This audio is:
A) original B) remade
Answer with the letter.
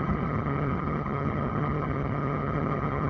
B